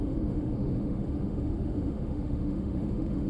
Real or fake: fake